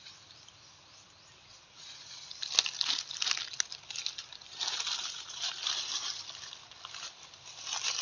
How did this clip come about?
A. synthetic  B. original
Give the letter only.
B